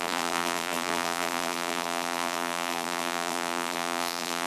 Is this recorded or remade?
remade